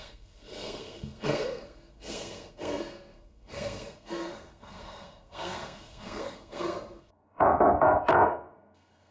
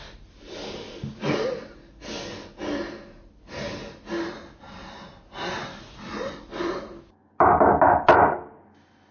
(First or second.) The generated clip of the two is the first